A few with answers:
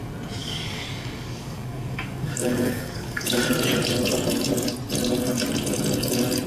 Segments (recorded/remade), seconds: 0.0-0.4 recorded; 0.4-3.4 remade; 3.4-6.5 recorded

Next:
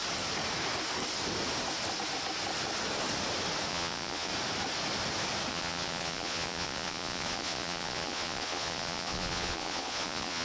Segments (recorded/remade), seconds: 0.0-3.7 recorded; 3.7-4.3 remade; 4.3-5.5 recorded; 5.5-10.4 remade

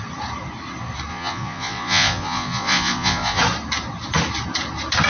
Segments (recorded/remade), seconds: 0.0-1.1 recorded; 1.1-3.4 remade; 3.4-5.1 recorded

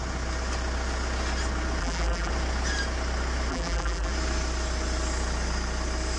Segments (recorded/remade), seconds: 0.0-1.8 recorded; 1.8-2.3 remade; 2.3-3.5 recorded; 3.5-4.1 remade; 4.1-6.2 recorded